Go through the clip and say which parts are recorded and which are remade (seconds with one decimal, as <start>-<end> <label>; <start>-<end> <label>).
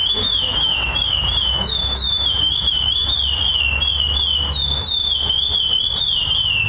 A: 0.0-3.1 remade; 3.1-6.7 recorded